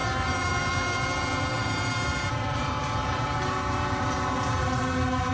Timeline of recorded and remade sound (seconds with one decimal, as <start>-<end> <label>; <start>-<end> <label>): 0.0-5.3 remade